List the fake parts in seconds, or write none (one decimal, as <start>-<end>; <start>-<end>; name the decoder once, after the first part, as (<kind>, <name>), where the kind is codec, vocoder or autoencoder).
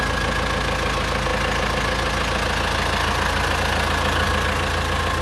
none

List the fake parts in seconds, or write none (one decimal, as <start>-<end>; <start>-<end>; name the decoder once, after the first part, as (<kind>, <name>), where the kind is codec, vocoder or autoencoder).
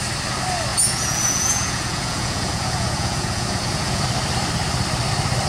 0.7-4.0 (vocoder, Vocos)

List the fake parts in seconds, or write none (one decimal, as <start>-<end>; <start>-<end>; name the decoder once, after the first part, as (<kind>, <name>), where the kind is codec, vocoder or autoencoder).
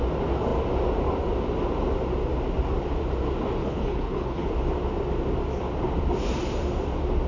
3.6-4.5 (codec, HILCodec)